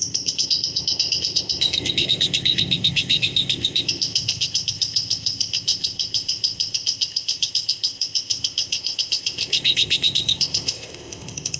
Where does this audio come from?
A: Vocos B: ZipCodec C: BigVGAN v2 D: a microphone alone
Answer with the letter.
B